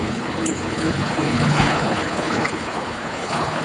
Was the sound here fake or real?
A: fake